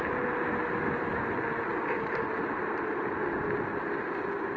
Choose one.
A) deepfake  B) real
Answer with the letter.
B